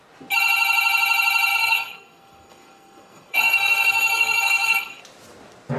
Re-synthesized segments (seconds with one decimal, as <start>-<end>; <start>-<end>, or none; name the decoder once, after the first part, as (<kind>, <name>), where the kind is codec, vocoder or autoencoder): 1.5-5.0 (codec, SNAC)